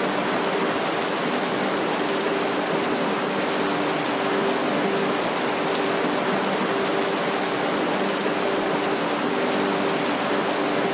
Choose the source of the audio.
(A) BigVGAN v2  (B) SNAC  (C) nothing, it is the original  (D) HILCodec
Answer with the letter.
C